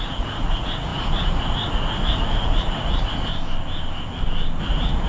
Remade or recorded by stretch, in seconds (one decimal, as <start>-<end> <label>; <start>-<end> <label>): 0.0-3.3 remade; 3.3-4.6 recorded; 4.6-5.1 remade